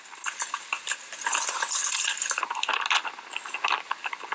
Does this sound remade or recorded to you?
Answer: recorded